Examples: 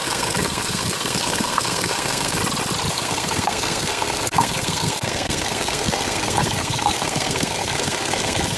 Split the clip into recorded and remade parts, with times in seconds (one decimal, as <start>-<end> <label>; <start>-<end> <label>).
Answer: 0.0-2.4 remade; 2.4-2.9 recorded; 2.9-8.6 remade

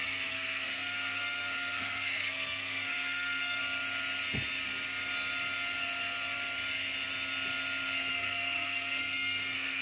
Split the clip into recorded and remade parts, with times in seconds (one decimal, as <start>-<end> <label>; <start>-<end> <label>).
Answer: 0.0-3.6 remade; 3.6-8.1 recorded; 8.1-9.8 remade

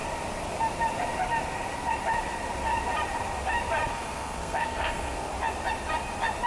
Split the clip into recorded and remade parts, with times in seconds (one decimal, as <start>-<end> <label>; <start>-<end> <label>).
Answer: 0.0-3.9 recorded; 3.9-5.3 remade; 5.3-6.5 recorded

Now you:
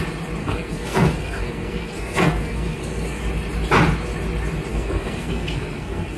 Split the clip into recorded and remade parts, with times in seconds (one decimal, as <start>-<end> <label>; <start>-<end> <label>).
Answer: 0.0-0.4 recorded; 0.4-3.2 remade; 3.2-4.7 recorded; 4.7-6.2 remade

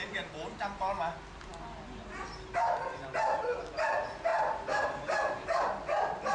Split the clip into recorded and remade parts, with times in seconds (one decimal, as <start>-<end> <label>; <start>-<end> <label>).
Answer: 0.0-6.3 recorded